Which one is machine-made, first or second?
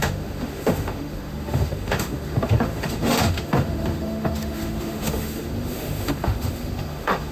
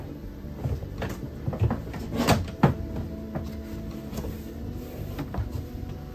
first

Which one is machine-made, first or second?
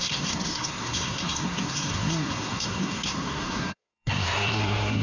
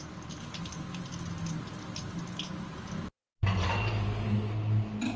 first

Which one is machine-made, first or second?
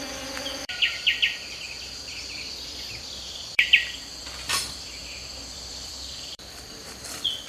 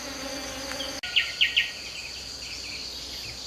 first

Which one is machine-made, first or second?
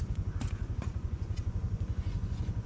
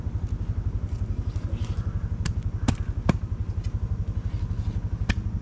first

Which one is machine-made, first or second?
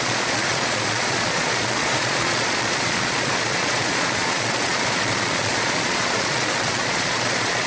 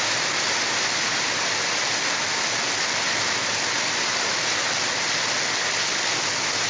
first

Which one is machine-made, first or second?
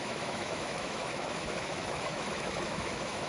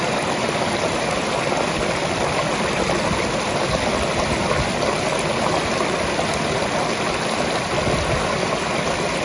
first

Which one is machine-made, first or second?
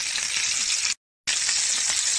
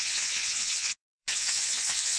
second